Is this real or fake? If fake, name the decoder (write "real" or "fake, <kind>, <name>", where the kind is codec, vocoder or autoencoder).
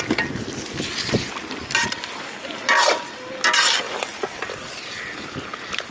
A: real